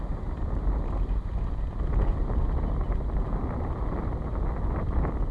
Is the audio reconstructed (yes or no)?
no